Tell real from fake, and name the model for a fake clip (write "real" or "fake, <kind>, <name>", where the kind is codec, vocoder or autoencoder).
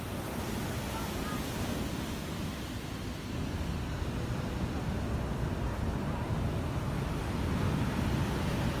real